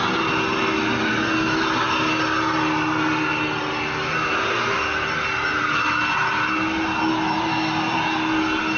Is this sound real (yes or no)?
yes